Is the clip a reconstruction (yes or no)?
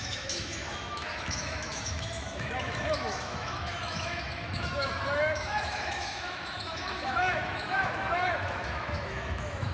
yes